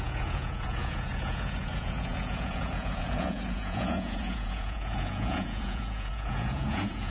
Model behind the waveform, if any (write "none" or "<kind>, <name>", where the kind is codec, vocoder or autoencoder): vocoder, Vocos